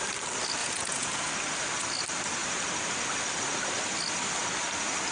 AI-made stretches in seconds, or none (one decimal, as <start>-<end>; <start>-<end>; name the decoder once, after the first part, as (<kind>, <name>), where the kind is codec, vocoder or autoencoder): 0.6-1.3 (vocoder, Vocos)